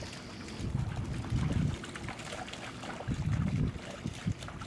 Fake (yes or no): no